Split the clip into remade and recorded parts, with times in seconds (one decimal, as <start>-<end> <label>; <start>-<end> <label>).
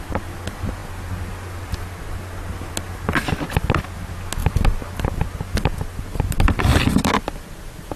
0.0-8.0 recorded